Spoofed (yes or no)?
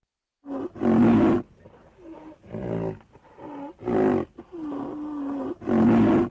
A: no